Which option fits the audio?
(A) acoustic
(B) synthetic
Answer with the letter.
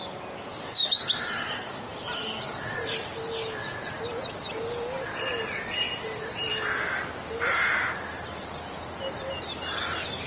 A